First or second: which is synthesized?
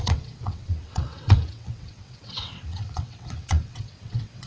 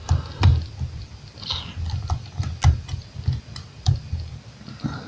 first